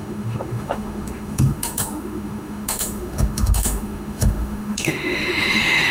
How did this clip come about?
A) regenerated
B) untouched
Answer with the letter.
A